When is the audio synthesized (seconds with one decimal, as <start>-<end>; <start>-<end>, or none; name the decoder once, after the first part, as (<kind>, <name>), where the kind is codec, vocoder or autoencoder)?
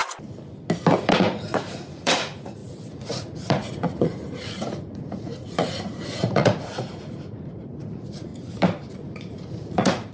1.0-8.3 (vocoder, Vocos); 8.9-10.1